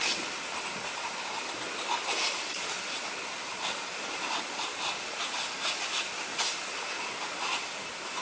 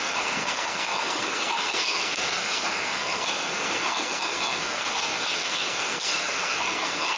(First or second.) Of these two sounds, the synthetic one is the second